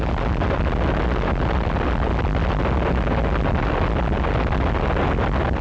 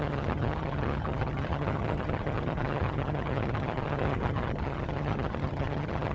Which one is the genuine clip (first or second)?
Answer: first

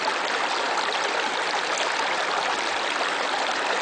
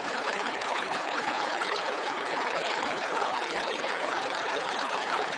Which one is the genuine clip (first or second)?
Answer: first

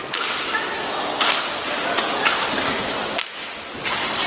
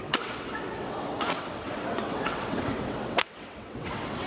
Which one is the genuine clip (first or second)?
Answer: first